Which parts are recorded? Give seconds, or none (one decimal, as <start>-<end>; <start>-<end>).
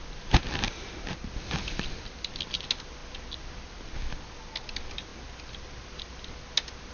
0.0-6.9